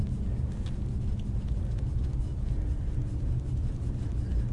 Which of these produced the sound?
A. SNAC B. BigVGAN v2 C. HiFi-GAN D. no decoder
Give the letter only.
D